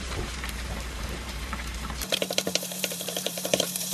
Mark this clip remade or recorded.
remade